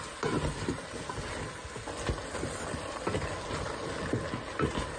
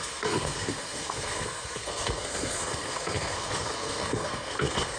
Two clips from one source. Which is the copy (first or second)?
second